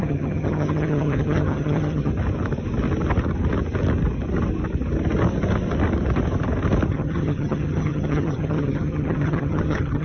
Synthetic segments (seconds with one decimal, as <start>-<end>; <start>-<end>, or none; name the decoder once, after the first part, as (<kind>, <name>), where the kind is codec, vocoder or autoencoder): 0.0-2.1 (vocoder, HiFi-GAN); 6.9-10.0